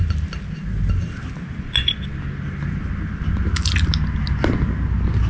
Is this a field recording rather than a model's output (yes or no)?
yes